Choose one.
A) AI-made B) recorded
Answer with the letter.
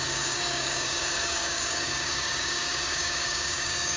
A